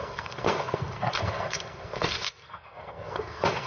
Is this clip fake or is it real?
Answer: fake